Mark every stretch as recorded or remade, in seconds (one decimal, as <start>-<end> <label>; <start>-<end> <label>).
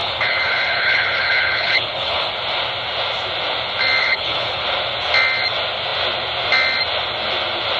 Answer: 0.0-2.3 remade; 2.3-4.0 recorded; 4.0-4.6 remade; 4.6-7.8 recorded